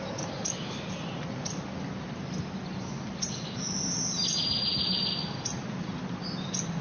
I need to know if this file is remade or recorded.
recorded